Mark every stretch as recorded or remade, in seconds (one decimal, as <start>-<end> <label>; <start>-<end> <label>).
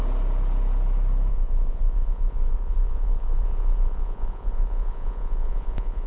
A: 0.0-1.3 recorded; 1.3-6.1 remade